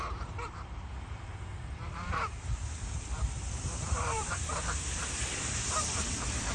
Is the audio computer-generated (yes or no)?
yes